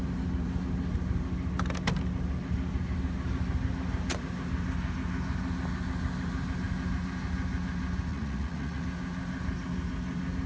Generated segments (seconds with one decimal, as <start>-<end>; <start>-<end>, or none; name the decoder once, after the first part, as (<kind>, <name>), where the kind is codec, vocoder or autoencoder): 8.1-8.8 (vocoder, Vocos)